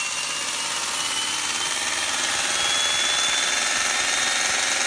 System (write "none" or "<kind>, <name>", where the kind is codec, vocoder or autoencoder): none